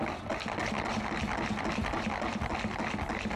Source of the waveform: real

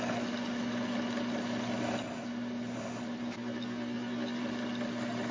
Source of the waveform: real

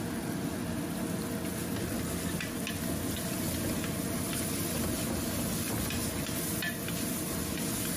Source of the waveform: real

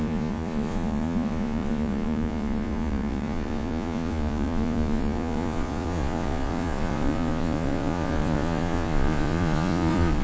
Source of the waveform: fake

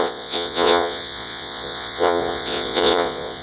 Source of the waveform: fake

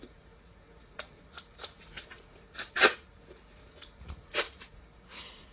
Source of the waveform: fake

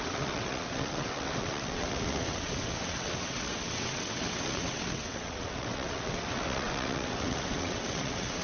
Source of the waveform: fake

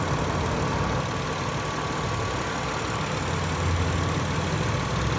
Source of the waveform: real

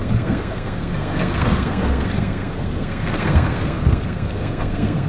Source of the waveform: fake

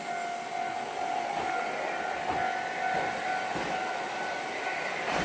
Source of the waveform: real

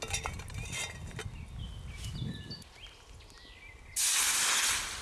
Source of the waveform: real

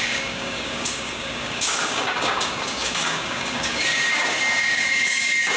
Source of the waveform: fake